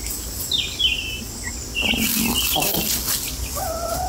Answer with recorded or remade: recorded